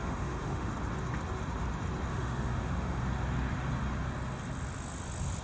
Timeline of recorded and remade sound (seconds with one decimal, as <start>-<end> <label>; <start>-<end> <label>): 0.0-0.7 remade; 0.7-2.1 recorded; 2.1-3.0 remade; 3.0-5.4 recorded